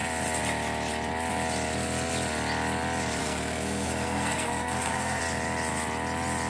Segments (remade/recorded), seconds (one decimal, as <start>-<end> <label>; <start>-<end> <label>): 0.0-3.2 recorded; 3.2-5.2 remade; 5.2-6.5 recorded